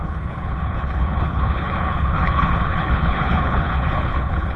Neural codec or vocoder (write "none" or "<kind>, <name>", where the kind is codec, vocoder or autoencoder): codec, HILCodec